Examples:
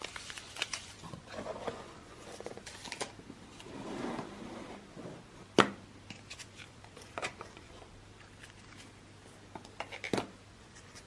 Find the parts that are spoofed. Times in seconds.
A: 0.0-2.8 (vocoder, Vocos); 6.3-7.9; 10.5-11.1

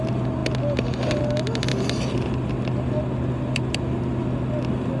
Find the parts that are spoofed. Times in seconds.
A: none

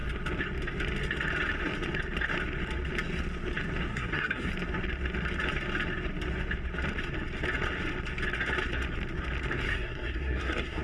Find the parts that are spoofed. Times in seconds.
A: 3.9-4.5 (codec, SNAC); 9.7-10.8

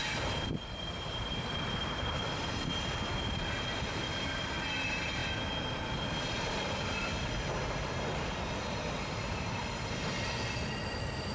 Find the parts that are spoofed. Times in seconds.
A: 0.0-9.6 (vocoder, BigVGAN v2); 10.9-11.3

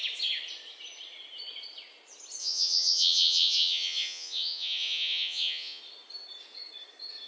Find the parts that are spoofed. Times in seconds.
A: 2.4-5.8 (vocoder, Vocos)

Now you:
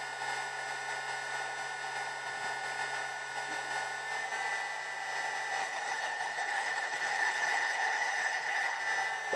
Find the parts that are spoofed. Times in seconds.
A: 5.6-8.8 (codec, HILCodec)

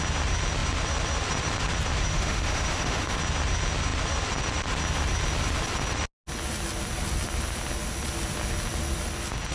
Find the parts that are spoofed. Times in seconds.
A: 2.1-3.2 (autoencoder, DAC-VAE)